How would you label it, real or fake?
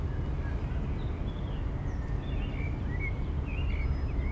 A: real